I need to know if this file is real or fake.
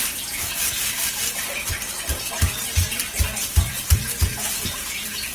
fake